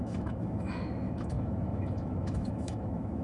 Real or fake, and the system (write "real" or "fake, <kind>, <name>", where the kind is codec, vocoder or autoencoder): fake, autoencoder, DAC-VAE